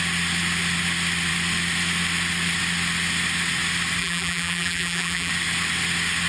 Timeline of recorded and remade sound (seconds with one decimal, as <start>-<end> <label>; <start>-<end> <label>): 0.0-4.0 recorded; 4.0-5.3 remade; 5.3-6.3 recorded